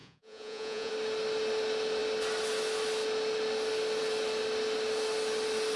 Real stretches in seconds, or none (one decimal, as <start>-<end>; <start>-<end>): 0.9-5.8